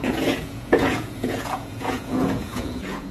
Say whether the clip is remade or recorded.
remade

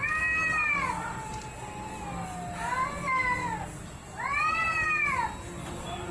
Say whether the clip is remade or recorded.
recorded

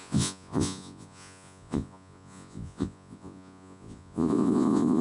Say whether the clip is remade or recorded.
remade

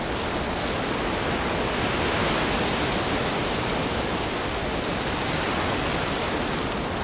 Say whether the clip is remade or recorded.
recorded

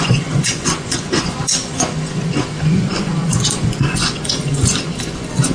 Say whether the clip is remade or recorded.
remade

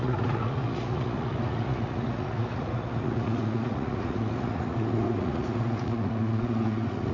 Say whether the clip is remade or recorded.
remade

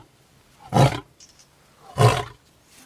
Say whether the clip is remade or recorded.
recorded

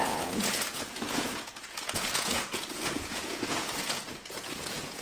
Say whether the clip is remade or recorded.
remade